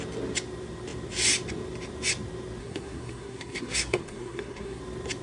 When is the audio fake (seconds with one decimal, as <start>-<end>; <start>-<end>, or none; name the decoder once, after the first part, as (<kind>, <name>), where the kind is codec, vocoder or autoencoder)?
2.6-4.8 (codec, SNAC)